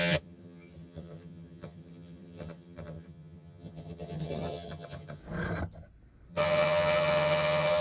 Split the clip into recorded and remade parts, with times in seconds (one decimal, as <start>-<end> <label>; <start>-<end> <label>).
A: 0.0-5.2 remade; 5.2-6.3 recorded; 6.3-7.8 remade